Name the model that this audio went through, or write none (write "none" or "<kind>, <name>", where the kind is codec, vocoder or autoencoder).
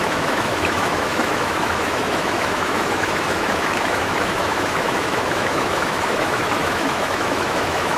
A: autoencoder, DAC-VAE